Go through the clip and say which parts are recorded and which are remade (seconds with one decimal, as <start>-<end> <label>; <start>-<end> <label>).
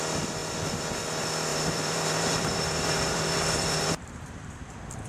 0.0-1.5 recorded; 1.5-4.6 remade; 4.6-5.1 recorded